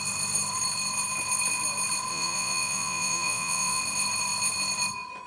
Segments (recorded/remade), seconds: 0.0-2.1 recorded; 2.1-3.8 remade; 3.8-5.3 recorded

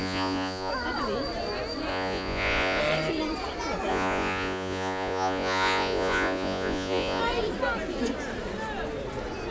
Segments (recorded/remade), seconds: 0.0-0.7 remade; 0.7-1.9 recorded; 1.9-2.8 remade; 2.8-3.9 recorded; 3.9-7.2 remade; 7.2-9.5 recorded

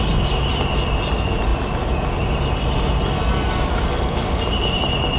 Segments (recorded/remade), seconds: 0.0-5.2 recorded

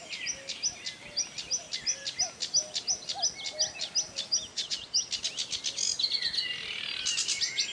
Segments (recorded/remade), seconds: 0.0-4.5 recorded; 4.5-5.1 remade; 5.1-7.7 recorded

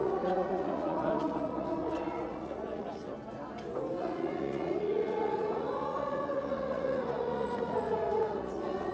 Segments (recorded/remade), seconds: 0.0-3.1 remade; 3.1-4.0 recorded; 4.0-8.9 remade

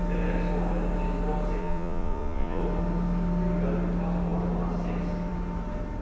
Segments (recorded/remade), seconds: 0.0-1.6 recorded; 1.6-2.6 remade; 2.6-6.0 recorded

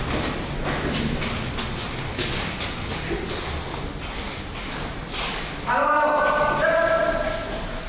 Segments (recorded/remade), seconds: 0.0-7.9 recorded